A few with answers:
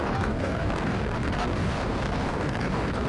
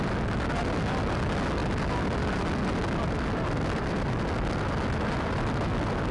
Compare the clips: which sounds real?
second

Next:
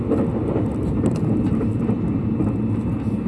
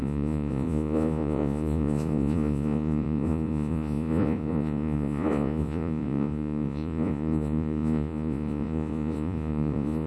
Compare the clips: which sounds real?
first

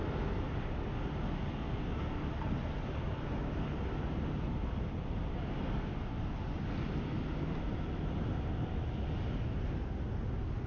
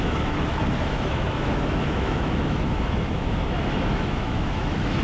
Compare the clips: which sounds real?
first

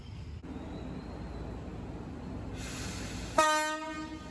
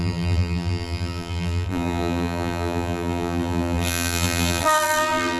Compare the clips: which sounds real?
first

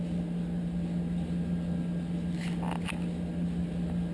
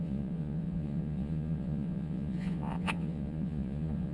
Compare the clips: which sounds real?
first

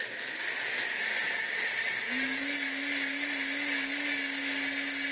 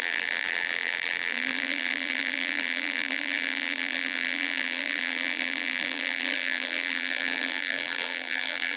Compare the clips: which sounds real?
first